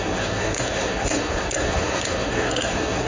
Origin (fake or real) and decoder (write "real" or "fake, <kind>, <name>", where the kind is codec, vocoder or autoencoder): fake, codec, SNAC